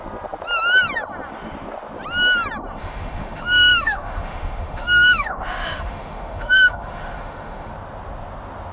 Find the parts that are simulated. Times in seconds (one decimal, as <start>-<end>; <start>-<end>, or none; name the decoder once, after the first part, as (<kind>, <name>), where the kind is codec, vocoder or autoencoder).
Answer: 2.8-7.7 (autoencoder, DAC-VAE)